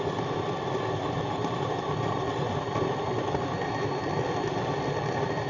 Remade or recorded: recorded